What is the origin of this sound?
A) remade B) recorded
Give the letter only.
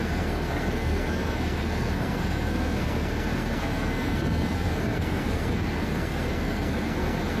A